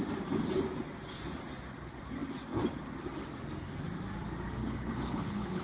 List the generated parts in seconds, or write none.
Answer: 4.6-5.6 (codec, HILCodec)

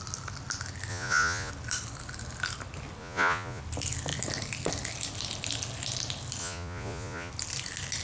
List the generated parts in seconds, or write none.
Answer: 0.9-1.5 (vocoder, Vocos); 3.0-3.6; 6.4-7.3

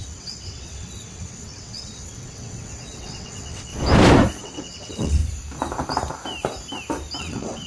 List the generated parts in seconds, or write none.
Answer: 0.0-3.7 (vocoder, WaveNeXt); 4.4-5.2; 7.2-7.7

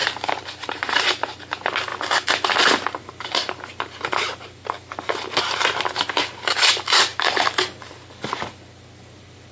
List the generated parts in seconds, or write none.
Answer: 0.0-9.5 (vocoder, BigVGAN v2)